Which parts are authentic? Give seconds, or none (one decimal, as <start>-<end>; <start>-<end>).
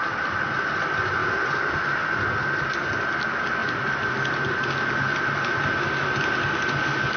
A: 0.0-1.2; 1.8-7.2